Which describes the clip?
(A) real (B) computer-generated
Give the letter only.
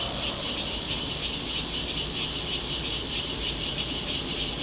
A